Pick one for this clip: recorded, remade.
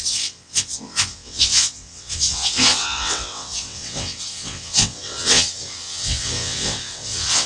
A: remade